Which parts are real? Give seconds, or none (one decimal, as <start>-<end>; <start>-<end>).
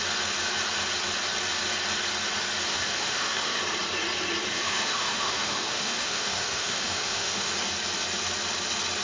0.0-2.7; 3.6-4.5; 7.5-9.0